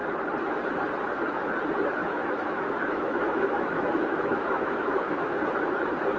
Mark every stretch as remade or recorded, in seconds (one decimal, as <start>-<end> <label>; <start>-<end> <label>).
0.0-2.0 recorded; 2.0-5.4 remade; 5.4-6.2 recorded